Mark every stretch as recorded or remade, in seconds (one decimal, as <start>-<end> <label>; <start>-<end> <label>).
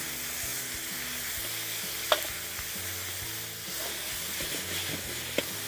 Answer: 0.0-5.7 recorded